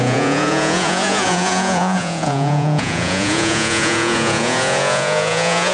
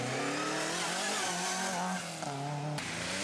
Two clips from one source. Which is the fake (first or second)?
first